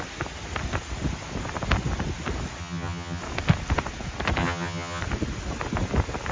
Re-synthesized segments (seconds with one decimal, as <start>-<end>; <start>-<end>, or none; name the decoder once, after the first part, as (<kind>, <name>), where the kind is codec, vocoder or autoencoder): 2.6-3.2 (vocoder, HiFi-GAN); 4.4-5.0